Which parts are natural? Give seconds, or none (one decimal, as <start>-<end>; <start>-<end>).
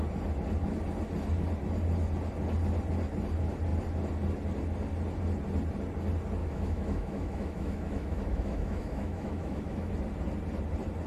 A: 0.0-6.4; 9.9-11.1